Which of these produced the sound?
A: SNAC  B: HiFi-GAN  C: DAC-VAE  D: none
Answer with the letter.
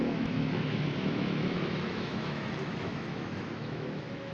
C